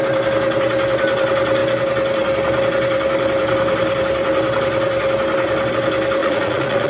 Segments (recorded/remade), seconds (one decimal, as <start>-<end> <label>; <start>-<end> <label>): 0.0-6.2 recorded; 6.2-6.9 remade